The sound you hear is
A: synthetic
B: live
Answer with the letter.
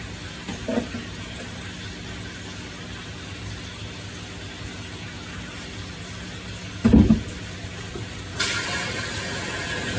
B